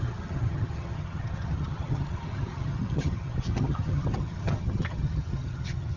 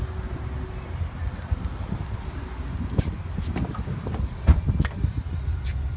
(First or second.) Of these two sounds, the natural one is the second